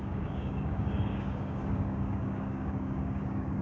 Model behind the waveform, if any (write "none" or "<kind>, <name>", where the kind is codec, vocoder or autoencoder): codec, DAC